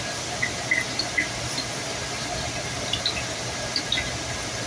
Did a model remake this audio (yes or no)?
no